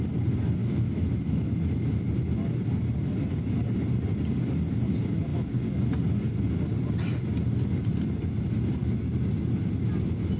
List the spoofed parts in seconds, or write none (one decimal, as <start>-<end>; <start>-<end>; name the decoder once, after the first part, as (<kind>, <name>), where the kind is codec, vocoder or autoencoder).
0.6-2.0 (autoencoder, DAC-VAE)